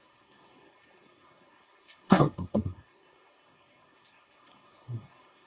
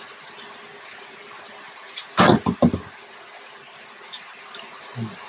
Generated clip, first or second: first